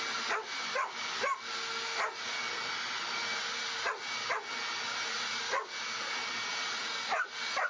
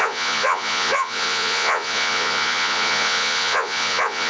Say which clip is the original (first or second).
first